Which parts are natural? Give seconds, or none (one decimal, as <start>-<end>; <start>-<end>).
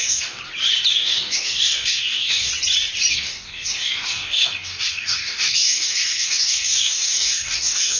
0.4-0.9; 2.5-3.1